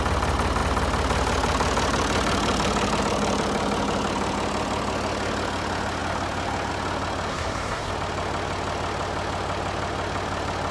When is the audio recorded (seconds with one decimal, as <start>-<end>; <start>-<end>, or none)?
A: 0.0-7.3; 7.9-10.7